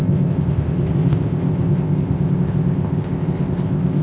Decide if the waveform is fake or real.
fake